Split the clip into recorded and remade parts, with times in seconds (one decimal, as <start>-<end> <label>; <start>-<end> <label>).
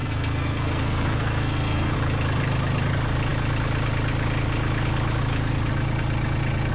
0.0-1.9 remade; 1.9-6.7 recorded